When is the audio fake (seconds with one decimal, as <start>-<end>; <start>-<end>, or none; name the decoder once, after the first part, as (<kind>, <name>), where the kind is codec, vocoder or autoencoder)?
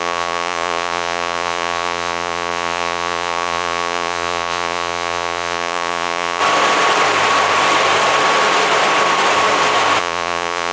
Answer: 0.0-6.4 (vocoder, Vocos); 10.0-10.7